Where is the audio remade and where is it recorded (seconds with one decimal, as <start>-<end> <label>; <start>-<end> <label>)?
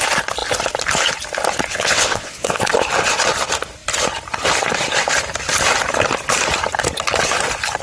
0.0-1.7 recorded; 1.7-2.7 remade; 2.7-7.8 recorded